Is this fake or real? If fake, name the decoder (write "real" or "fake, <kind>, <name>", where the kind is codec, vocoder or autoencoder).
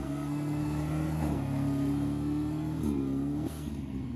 fake, codec, SNAC